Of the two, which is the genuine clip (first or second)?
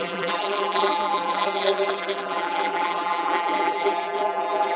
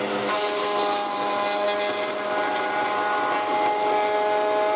second